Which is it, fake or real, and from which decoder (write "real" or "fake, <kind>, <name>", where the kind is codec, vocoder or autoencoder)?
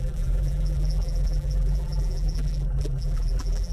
fake, vocoder, BigVGAN v2